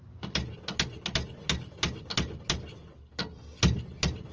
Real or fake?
real